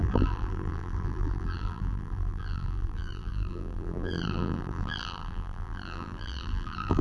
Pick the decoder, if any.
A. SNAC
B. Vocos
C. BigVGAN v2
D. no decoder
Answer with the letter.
C